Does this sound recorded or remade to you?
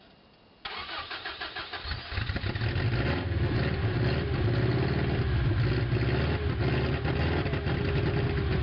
recorded